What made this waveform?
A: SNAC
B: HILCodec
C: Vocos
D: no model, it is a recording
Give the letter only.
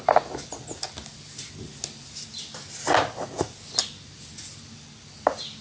D